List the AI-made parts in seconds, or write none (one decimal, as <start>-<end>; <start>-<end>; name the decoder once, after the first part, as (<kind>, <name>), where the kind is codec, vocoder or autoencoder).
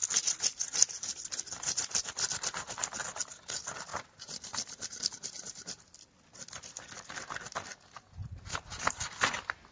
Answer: 3.9-5.0 (vocoder, BigVGAN v2); 8.2-9.1